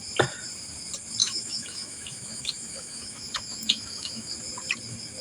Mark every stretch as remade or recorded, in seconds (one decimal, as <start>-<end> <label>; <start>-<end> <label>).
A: 0.0-1.2 recorded; 1.2-4.3 remade; 4.3-5.2 recorded